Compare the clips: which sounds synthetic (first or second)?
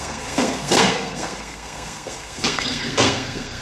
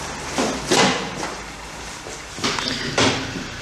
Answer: first